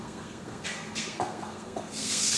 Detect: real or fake fake